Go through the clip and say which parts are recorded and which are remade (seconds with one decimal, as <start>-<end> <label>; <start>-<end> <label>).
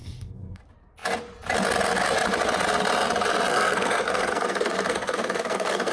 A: 0.0-0.6 remade; 0.6-3.5 recorded; 3.5-5.9 remade